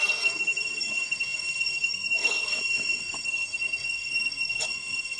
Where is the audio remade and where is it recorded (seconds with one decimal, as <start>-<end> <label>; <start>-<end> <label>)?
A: 0.0-2.5 remade; 2.5-3.0 recorded; 3.0-5.2 remade